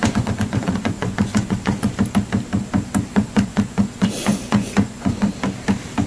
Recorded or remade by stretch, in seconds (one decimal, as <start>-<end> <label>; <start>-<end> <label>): 0.0-1.9 remade; 1.9-3.1 recorded; 3.1-5.3 remade; 5.3-6.1 recorded